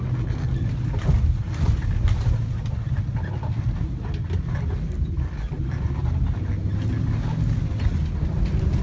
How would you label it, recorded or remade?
recorded